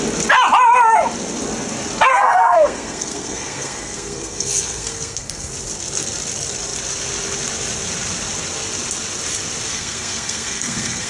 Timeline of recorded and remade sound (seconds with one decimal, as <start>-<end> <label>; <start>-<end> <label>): 0.0-2.1 recorded; 2.1-5.5 remade; 5.5-9.7 recorded; 9.7-11.1 remade